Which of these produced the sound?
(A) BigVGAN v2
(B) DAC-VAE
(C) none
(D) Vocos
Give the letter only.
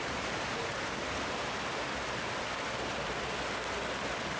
C